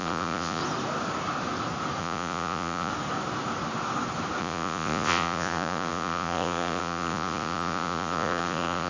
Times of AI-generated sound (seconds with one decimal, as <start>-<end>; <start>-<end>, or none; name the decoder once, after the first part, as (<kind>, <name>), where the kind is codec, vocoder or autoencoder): 0.0-0.6 (vocoder, Vocos); 2.0-2.9; 4.4-8.9